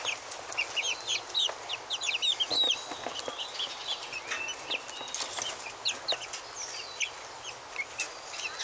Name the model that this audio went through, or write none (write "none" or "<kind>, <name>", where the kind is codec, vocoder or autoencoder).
none